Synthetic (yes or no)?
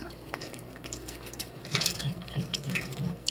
yes